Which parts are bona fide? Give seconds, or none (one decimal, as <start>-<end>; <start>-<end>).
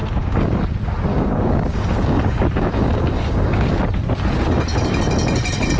0.6-1.1; 3.8-5.8